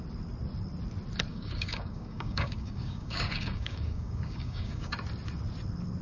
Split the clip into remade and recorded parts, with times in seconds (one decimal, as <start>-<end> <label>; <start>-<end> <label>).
0.0-1.3 recorded; 1.3-4.9 remade; 4.9-6.0 recorded